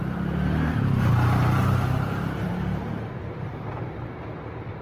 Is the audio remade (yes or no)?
yes